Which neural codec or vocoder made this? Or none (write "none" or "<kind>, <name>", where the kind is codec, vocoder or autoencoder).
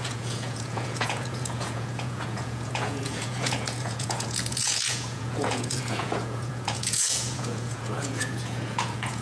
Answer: vocoder, Vocos